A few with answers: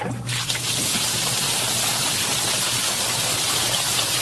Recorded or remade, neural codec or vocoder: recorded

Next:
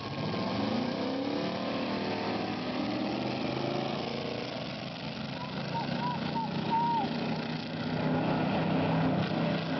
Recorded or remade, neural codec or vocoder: recorded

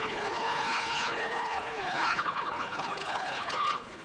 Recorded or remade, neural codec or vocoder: remade, codec, HILCodec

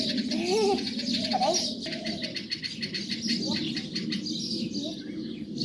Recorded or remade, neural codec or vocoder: recorded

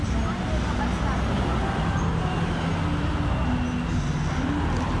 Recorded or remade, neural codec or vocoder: recorded